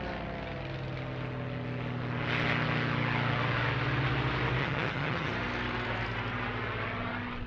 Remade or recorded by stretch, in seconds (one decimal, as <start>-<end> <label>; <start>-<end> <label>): 0.0-4.6 recorded; 4.6-5.3 remade; 5.3-7.5 recorded